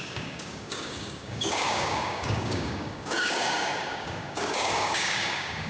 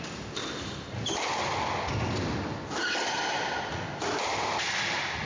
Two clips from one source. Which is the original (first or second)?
second